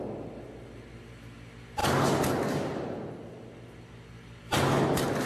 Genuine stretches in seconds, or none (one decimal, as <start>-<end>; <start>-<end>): 0.0-5.3